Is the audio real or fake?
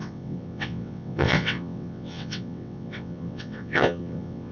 fake